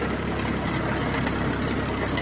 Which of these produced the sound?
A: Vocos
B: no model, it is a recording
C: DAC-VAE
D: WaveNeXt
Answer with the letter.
B